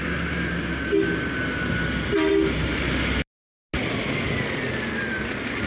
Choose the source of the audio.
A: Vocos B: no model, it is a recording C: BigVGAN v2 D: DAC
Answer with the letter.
B